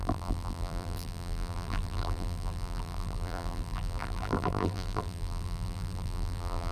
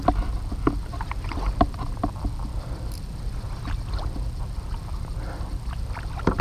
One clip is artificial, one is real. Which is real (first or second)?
second